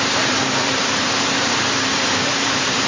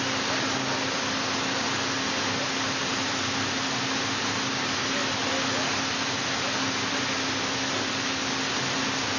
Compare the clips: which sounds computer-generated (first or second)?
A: first